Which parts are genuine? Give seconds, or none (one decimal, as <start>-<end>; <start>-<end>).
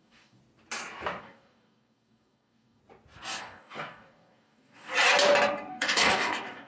0.4-1.2; 2.8-3.4; 4.9-5.7